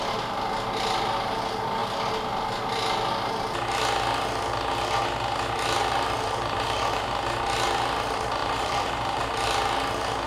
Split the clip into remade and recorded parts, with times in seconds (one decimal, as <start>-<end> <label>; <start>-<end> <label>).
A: 0.0-5.8 recorded; 5.8-7.1 remade; 7.1-8.4 recorded; 8.4-9.2 remade; 9.2-10.3 recorded